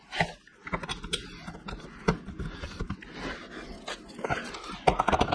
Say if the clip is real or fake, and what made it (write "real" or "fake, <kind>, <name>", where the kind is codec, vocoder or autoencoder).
real